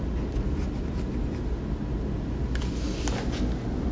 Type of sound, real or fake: real